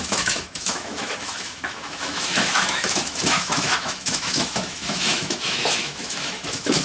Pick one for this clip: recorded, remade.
remade